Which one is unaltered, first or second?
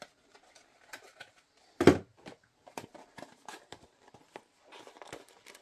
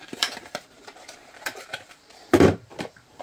first